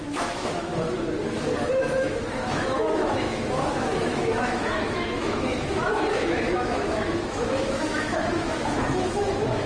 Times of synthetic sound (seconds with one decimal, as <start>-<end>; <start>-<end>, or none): 0.0-0.7; 2.0-9.7